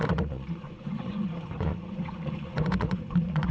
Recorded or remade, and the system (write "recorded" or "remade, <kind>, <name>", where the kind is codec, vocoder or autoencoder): remade, vocoder, Vocos